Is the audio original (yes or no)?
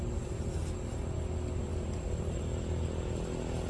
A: yes